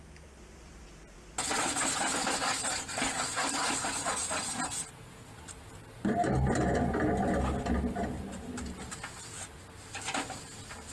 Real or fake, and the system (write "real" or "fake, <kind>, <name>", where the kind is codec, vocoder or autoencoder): real